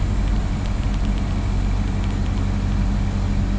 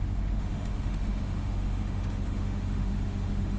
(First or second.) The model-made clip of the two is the second